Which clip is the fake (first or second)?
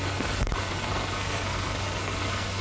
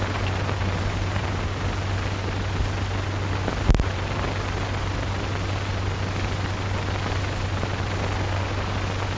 first